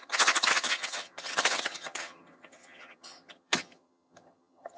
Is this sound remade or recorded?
remade